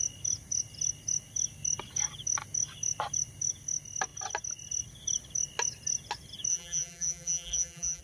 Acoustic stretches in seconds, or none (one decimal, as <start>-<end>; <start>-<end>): 0.0-6.5